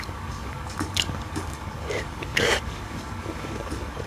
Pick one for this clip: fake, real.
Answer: fake